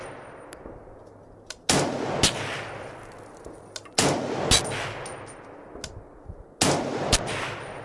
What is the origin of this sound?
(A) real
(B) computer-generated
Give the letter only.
A